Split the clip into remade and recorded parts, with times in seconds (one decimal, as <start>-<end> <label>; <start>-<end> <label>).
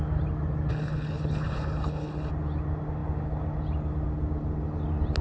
0.0-0.7 recorded; 0.7-2.3 remade; 2.3-5.2 recorded